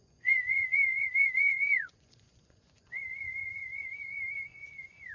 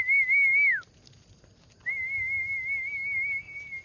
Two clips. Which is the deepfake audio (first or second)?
first